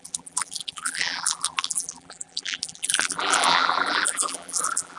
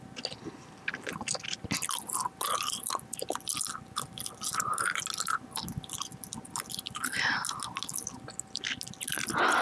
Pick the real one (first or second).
second